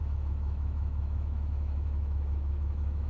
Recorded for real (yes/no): no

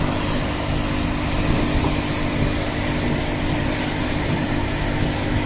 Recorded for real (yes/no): yes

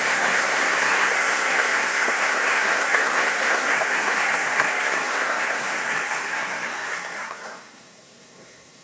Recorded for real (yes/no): no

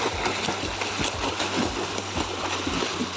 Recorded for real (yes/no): yes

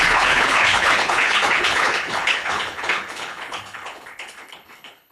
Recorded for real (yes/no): no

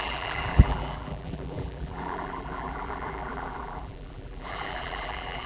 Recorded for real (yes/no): no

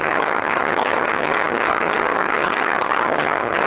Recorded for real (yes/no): no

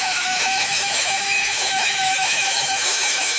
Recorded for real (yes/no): no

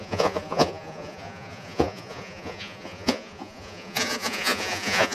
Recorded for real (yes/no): no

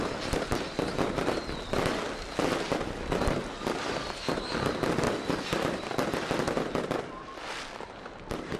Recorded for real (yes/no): yes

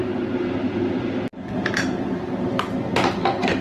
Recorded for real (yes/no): yes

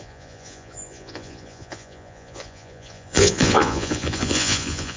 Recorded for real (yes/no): no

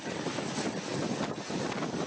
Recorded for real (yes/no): yes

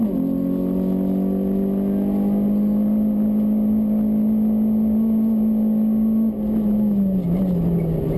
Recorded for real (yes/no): yes